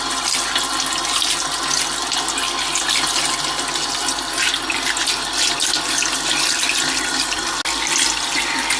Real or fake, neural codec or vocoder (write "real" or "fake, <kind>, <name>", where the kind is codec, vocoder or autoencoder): real